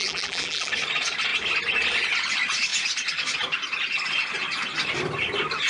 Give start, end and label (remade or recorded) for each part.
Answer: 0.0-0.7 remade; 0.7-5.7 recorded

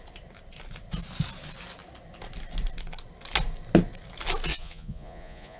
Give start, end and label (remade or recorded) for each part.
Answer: 0.0-4.5 recorded; 4.5-5.6 remade

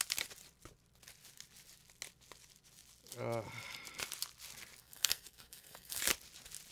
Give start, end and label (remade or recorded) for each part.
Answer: 0.0-4.8 recorded; 4.8-6.0 remade; 6.0-6.7 recorded

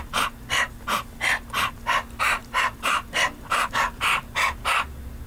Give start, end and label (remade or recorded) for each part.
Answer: 0.0-5.3 recorded

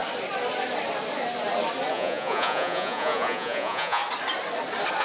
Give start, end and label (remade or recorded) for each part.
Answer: 0.0-1.9 recorded; 1.9-4.0 remade; 4.0-5.0 recorded

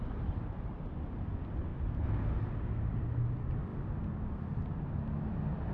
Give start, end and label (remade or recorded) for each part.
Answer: 0.0-5.7 recorded

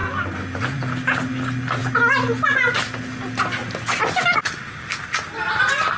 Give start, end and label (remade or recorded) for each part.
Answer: 0.0-6.0 recorded

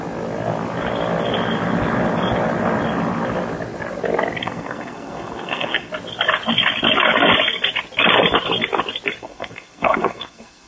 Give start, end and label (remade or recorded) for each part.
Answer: 0.0-4.4 recorded; 4.4-5.9 remade; 5.9-9.2 recorded; 9.2-10.7 remade